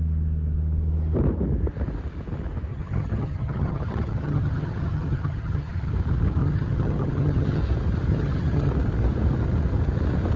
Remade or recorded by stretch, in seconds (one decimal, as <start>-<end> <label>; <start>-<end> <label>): 0.0-2.7 recorded; 2.7-5.9 remade; 5.9-6.4 recorded; 6.4-7.6 remade; 7.6-8.1 recorded; 8.1-8.7 remade; 8.7-10.4 recorded